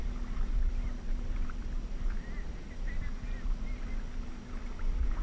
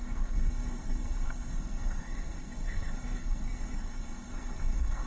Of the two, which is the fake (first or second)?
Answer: second